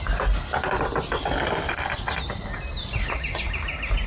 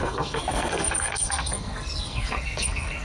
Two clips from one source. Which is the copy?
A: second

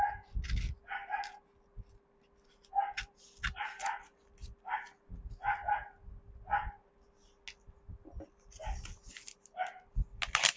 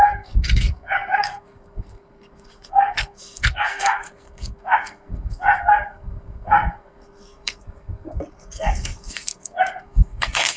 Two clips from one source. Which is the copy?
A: second